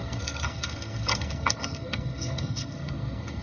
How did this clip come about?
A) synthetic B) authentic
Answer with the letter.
A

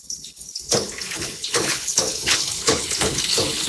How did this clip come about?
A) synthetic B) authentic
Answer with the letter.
A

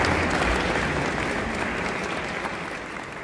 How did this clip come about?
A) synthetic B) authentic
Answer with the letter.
B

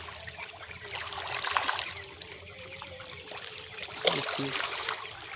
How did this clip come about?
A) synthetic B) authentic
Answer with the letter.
B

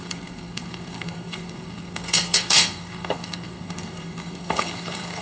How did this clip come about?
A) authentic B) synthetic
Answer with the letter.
B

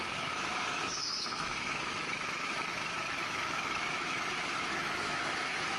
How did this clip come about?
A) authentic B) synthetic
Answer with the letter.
B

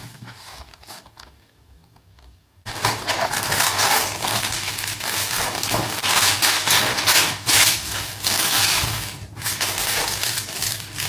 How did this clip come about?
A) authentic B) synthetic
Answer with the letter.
B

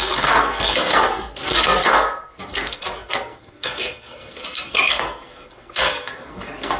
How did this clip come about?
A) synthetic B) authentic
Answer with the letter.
A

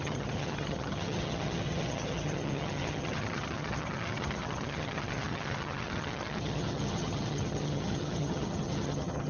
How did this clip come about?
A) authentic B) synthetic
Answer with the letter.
B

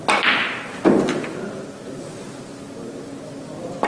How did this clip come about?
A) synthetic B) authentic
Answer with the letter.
B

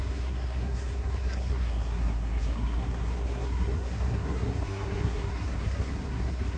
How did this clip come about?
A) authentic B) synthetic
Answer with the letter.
B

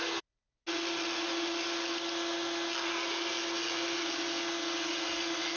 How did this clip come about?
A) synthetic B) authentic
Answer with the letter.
B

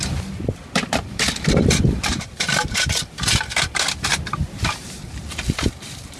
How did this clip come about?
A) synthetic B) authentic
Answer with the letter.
A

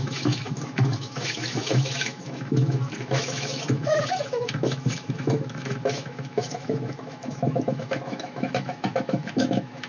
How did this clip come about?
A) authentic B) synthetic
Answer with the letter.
B